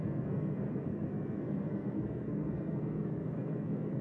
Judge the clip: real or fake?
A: fake